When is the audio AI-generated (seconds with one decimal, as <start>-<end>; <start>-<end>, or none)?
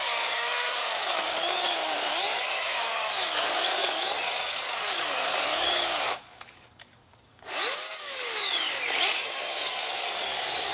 0.0-10.7